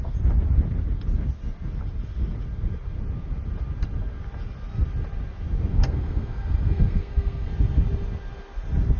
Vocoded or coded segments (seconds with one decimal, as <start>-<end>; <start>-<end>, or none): 5.7-7.5